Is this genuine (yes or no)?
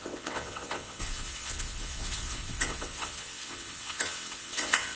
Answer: no